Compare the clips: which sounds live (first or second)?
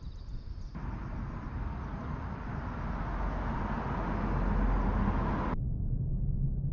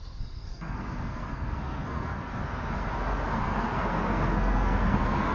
first